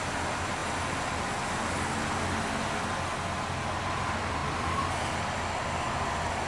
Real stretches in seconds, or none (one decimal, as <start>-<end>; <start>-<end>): 0.0-6.5